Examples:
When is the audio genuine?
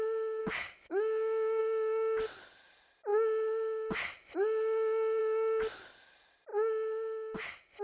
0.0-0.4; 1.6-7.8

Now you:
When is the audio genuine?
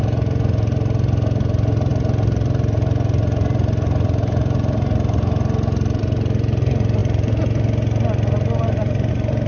0.0-9.5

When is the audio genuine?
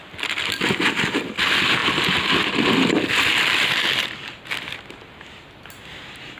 0.0-6.4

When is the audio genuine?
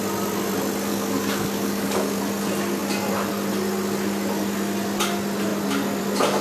0.0-0.9; 2.2-6.4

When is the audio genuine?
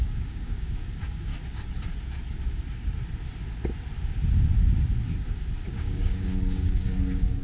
1.3-5.7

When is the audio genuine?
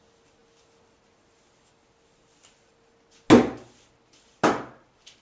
0.0-5.2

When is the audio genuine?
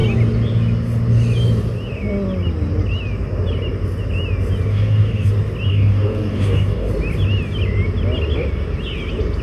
0.0-4.7; 5.3-5.7; 6.9-9.4